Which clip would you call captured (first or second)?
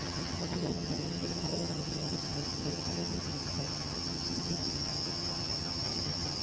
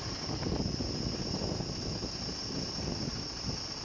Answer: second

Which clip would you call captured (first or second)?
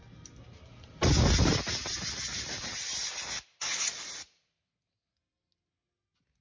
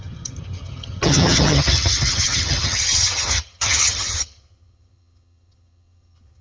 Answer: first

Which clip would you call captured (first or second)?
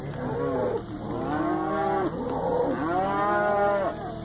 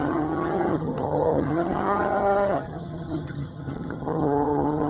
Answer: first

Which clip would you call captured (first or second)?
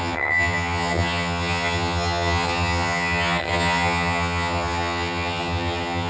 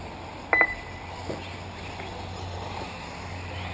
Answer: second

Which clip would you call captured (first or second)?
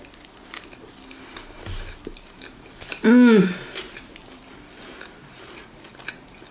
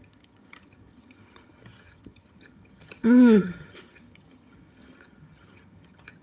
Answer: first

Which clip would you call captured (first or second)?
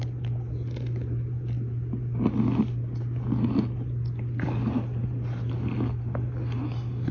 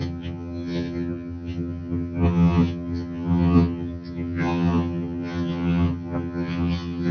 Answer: first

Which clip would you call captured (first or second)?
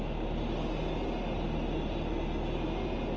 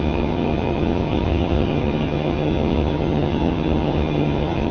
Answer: first